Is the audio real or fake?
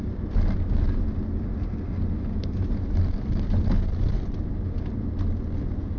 real